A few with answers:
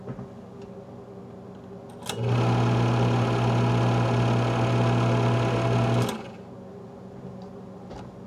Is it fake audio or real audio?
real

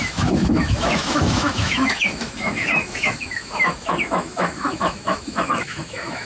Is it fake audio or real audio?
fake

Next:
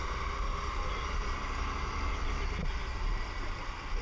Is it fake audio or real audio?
real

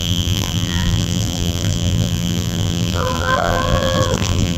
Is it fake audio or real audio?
fake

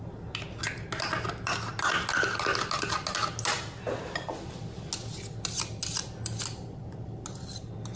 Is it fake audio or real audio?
real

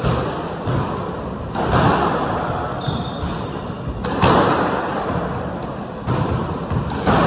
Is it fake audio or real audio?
real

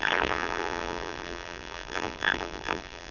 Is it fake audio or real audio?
fake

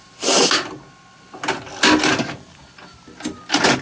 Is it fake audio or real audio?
real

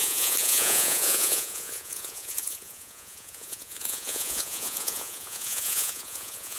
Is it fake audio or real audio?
fake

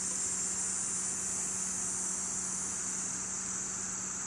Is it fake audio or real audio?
real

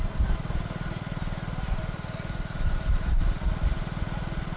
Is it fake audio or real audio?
real